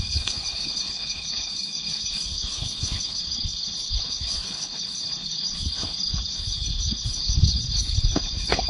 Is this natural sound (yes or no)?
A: no